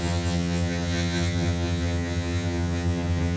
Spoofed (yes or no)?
yes